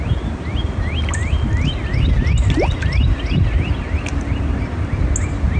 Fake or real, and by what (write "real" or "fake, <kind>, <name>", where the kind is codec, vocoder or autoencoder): real